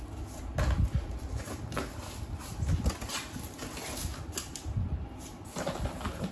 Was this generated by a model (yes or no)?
no